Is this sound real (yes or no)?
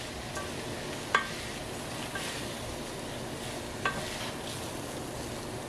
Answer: yes